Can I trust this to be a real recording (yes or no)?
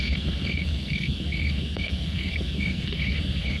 no